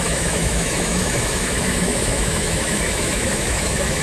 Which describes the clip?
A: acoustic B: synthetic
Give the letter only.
B